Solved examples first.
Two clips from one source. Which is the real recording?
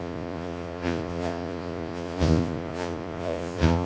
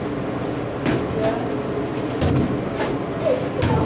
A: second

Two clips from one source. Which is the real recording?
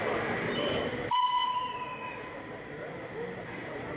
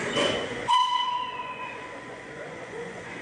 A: first